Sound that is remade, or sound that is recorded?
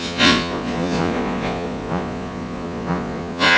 remade